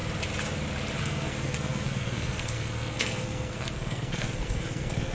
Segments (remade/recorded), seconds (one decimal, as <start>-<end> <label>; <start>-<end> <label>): 0.0-1.0 recorded; 1.0-5.1 remade